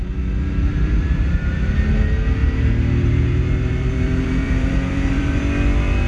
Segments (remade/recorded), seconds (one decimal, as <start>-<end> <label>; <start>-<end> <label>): 0.0-0.7 recorded; 0.7-1.7 remade; 1.7-2.4 recorded; 2.4-5.4 remade; 5.4-6.1 recorded

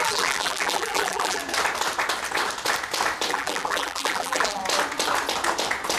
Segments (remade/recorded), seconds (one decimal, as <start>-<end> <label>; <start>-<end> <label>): 0.0-1.4 remade; 1.4-3.3 recorded; 3.3-4.6 remade; 4.6-6.0 recorded

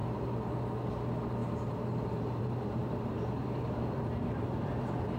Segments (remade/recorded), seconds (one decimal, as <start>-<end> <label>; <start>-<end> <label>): 0.0-0.9 recorded; 0.9-5.2 remade

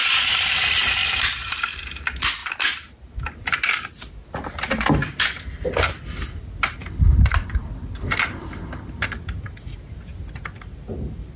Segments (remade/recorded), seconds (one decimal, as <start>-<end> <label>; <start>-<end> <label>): 0.0-0.5 remade; 0.5-11.4 recorded

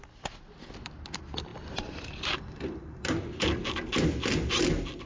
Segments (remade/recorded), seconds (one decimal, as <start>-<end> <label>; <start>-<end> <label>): 0.0-5.1 recorded

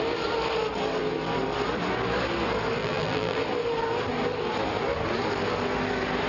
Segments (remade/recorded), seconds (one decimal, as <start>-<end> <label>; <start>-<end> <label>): 0.0-2.8 recorded; 2.8-3.4 remade; 3.4-6.3 recorded